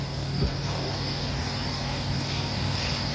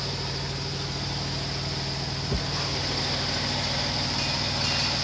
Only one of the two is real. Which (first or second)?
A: second